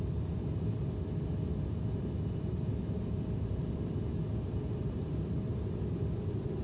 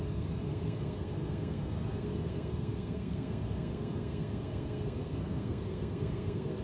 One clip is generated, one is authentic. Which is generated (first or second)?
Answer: second